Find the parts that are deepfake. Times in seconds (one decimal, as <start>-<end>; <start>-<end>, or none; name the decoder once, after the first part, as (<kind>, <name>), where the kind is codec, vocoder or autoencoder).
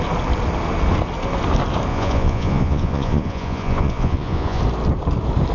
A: 1.9-4.6 (vocoder, Vocos)